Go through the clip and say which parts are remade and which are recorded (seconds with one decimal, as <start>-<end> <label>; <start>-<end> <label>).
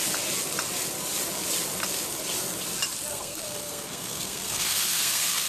0.0-3.1 recorded; 3.1-5.5 remade